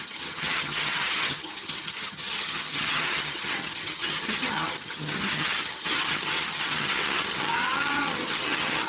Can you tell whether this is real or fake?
fake